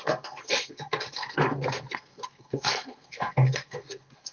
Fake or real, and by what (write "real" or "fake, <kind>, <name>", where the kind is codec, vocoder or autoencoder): fake, codec, SNAC